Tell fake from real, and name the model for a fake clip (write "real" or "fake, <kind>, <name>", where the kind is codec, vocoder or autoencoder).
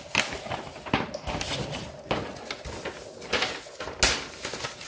real